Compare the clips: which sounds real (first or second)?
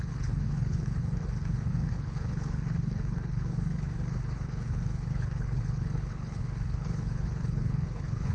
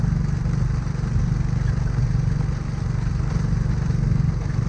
second